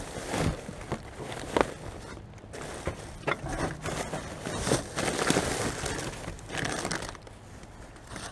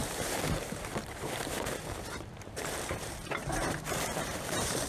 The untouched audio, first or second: first